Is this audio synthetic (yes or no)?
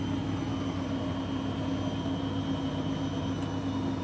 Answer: no